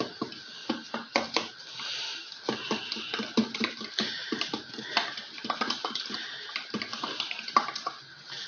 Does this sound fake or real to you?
real